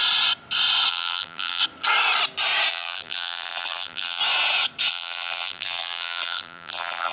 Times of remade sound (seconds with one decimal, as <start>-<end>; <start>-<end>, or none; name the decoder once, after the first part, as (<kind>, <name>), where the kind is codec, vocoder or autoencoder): 0.9-1.6 (vocoder, BigVGAN v2); 2.7-4.2; 4.9-7.1